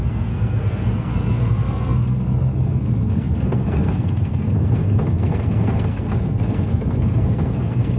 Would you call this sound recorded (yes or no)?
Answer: no